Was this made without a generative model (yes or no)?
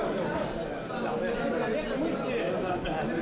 yes